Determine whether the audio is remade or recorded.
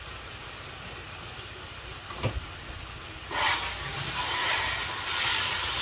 recorded